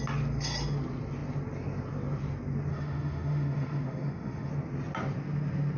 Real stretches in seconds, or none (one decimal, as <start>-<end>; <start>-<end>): 0.0-2.7; 4.5-5.8